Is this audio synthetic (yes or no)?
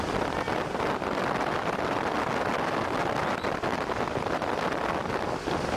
no